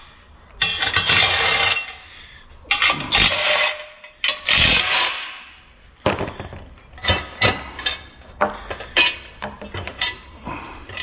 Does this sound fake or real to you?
real